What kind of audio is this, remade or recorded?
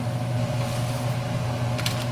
recorded